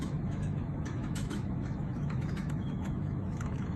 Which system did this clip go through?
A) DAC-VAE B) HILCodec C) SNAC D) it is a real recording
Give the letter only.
A